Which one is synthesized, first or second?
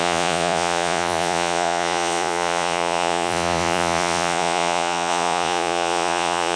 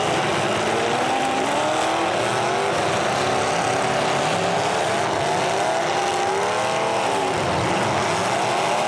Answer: first